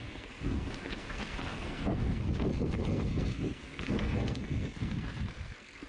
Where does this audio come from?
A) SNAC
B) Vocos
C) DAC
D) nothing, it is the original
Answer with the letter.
A